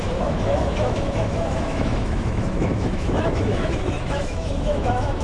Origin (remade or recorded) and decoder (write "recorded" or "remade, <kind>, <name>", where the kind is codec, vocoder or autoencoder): remade, autoencoder, DAC-VAE